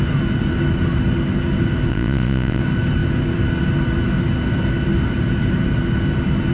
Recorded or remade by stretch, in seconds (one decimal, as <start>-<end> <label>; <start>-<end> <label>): 0.0-1.9 recorded; 1.9-2.6 remade; 2.6-6.5 recorded

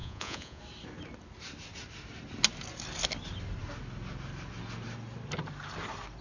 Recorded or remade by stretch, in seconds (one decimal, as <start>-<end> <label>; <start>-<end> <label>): 0.0-0.6 remade; 0.6-6.2 recorded

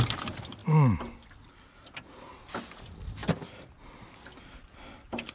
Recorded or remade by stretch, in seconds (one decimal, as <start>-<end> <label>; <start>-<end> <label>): 0.0-5.3 recorded

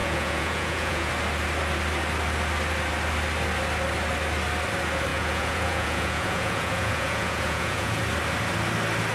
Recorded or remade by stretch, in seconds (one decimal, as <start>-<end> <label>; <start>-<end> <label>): 0.0-1.1 remade; 1.1-5.1 recorded; 5.1-8.0 remade; 8.0-9.1 recorded

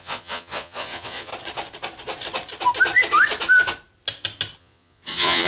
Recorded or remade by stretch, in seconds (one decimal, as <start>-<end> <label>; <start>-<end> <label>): 0.0-1.3 remade; 1.3-4.6 recorded; 4.6-5.5 remade

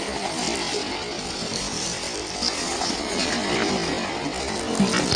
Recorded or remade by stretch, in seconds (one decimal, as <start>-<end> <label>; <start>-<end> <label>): 0.0-2.6 recorded; 2.6-3.3 remade; 3.3-5.2 recorded

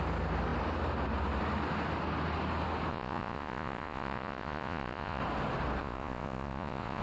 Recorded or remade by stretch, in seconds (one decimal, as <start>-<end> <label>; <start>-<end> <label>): 0.0-2.9 recorded; 2.9-5.2 remade; 5.2-5.8 recorded; 5.8-7.0 remade